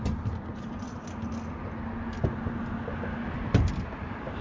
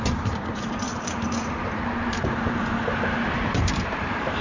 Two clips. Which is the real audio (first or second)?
first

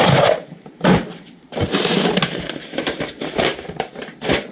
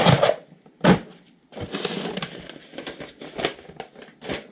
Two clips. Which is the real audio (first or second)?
second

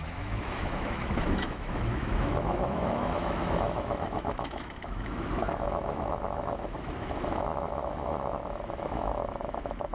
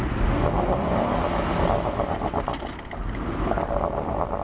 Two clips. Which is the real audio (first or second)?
second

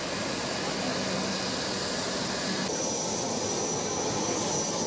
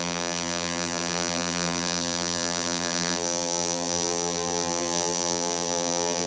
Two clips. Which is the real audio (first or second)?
first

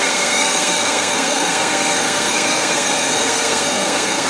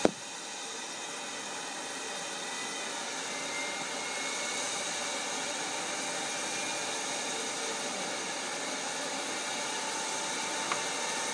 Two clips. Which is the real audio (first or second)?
second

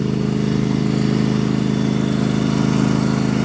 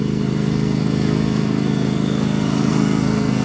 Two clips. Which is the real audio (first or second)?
first